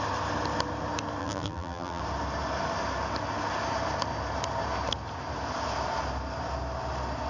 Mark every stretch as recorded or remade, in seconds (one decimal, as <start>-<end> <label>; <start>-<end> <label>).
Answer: 0.0-1.2 recorded; 1.2-2.0 remade; 2.0-7.3 recorded